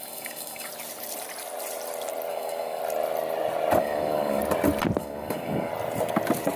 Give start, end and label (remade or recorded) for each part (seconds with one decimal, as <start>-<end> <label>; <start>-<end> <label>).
0.0-0.7 remade; 0.7-2.3 recorded; 2.3-2.8 remade; 2.8-3.8 recorded; 3.8-4.4 remade; 4.4-5.0 recorded; 5.0-5.7 remade; 5.7-6.6 recorded